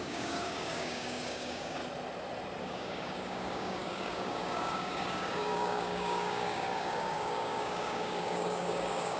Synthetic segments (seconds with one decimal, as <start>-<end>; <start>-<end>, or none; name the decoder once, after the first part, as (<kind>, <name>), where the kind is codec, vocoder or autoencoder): 0.0-1.8 (codec, DAC); 2.6-9.2